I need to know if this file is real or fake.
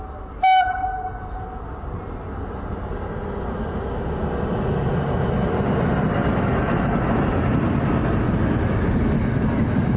real